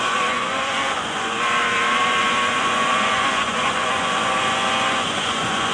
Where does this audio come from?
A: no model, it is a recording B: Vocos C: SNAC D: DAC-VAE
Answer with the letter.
B